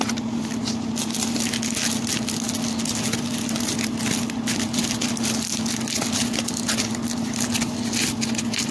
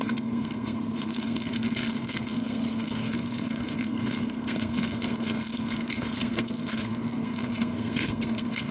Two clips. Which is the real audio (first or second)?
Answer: first